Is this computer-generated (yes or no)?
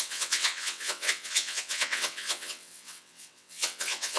yes